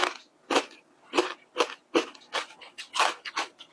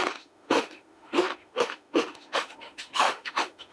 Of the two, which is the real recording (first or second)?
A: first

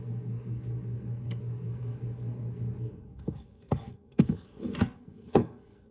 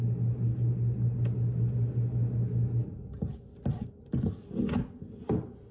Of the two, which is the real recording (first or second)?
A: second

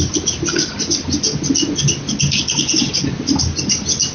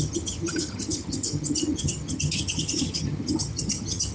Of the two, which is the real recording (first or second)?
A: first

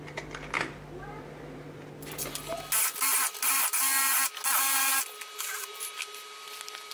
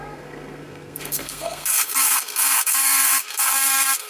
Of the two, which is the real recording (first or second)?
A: first